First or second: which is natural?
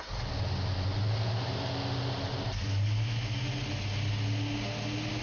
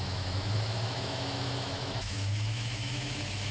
first